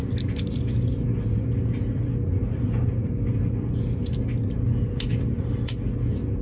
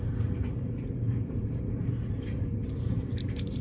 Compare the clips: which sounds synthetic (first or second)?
second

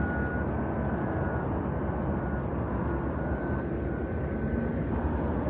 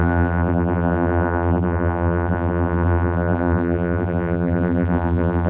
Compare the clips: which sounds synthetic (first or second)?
second